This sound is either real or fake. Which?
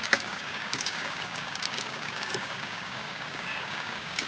fake